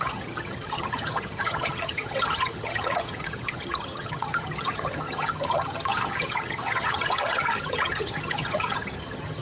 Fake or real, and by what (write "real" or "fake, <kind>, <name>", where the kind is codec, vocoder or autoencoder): fake, vocoder, HiFi-GAN